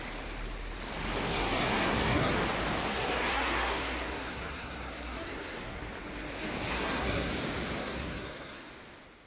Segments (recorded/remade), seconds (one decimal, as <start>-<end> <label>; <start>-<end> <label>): 0.0-1.3 recorded; 1.3-2.3 remade; 2.3-2.9 recorded; 2.9-5.8 remade; 5.8-6.7 recorded; 6.7-7.3 remade; 7.3-7.8 recorded; 7.8-8.7 remade; 8.7-9.3 recorded